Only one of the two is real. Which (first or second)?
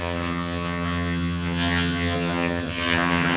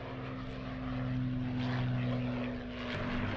second